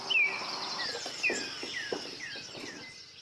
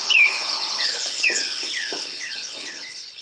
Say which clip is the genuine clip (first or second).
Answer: first